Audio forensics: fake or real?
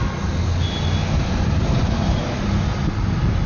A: real